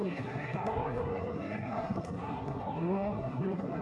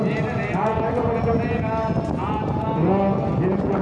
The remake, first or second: first